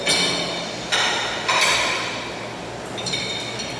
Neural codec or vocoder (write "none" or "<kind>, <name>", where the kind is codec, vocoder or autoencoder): none